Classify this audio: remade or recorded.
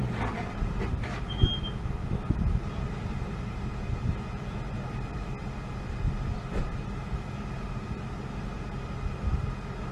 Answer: recorded